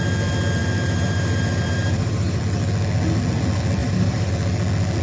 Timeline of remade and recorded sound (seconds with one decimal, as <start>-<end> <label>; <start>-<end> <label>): 0.0-0.6 recorded; 0.6-2.4 remade; 2.4-3.8 recorded; 3.8-4.3 remade; 4.3-5.0 recorded